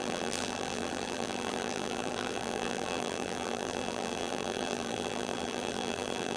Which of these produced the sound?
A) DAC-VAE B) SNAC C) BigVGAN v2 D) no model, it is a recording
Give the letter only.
C